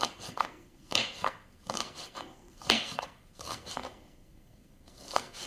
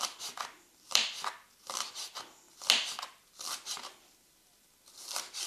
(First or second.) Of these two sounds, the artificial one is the first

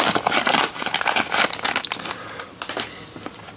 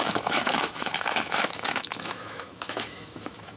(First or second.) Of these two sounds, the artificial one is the second